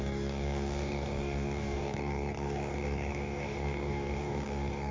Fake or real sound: fake